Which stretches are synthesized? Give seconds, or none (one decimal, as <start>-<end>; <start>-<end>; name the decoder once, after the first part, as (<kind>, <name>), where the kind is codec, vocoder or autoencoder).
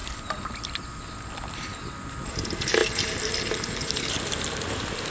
none